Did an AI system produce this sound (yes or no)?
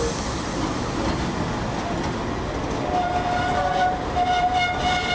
no